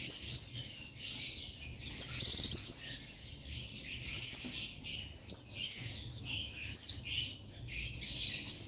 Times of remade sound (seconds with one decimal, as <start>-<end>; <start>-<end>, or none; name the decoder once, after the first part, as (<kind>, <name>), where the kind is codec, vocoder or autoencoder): 5.7-6.7 (autoencoder, DAC-VAE)